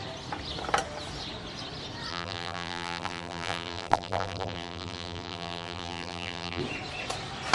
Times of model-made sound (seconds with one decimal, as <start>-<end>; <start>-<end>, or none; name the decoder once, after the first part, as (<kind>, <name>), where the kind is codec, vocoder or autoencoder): 2.1-6.6 (vocoder, BigVGAN v2)